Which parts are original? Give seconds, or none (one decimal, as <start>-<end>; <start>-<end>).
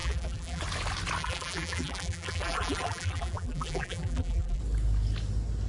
0.6-1.2; 4.6-5.7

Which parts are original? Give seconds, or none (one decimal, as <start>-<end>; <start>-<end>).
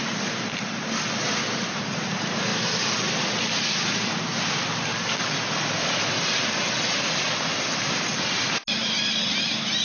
0.0-9.8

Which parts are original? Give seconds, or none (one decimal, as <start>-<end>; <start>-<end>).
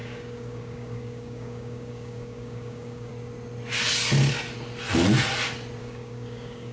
3.1-5.8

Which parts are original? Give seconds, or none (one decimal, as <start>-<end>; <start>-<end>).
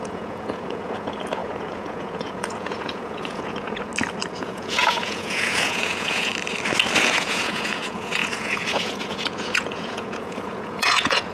3.9-4.4; 6.3-7.0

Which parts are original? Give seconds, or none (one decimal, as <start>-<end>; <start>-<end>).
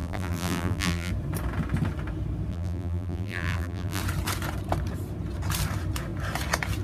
1.1-2.5; 4.0-6.8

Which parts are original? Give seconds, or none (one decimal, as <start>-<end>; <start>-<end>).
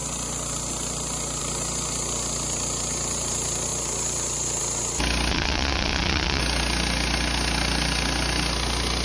0.0-5.3; 6.4-9.0